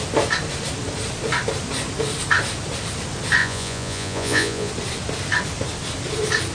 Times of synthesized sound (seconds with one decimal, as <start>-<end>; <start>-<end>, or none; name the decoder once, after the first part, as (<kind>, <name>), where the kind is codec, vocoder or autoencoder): 3.4-4.7 (vocoder, Vocos)